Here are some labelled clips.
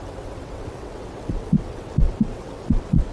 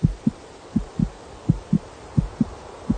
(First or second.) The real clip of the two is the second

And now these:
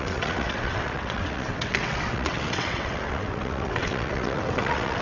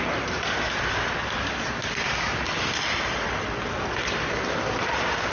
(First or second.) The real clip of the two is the second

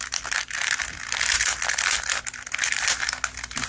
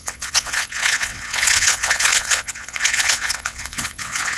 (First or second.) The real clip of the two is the first